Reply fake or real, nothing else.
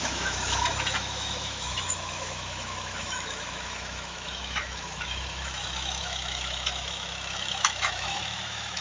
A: fake